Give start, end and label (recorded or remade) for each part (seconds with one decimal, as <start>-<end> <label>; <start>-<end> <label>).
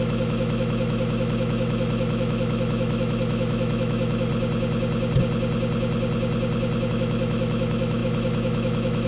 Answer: 0.0-4.3 remade; 4.3-6.9 recorded; 6.9-9.1 remade